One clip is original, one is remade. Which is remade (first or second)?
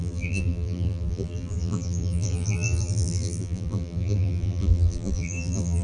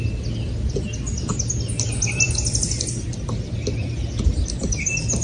first